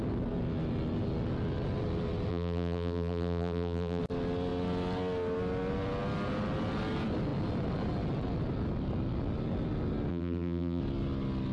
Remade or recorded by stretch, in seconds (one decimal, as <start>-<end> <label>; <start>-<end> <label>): 0.0-2.3 recorded; 2.3-4.0 remade; 4.0-10.1 recorded; 10.1-10.8 remade; 10.8-11.5 recorded